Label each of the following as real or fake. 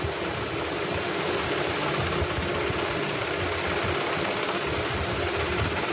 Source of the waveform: real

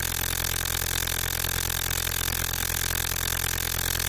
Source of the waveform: real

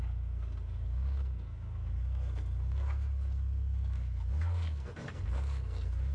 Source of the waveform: fake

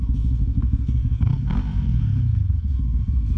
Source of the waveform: fake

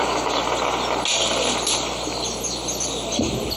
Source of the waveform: real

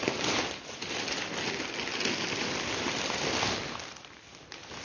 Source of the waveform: real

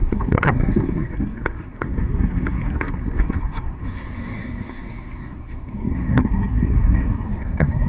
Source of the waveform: fake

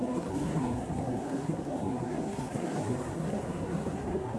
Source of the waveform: fake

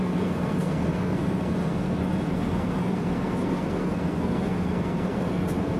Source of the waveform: fake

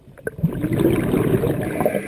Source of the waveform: real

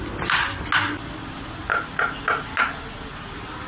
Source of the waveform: real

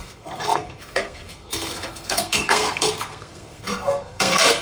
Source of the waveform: fake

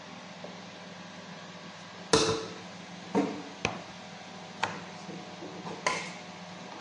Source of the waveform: real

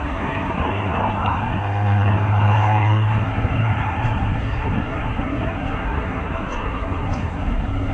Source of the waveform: fake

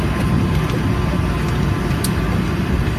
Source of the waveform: real